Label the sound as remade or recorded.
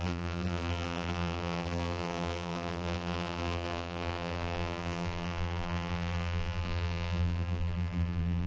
remade